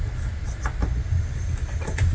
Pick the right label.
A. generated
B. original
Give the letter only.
B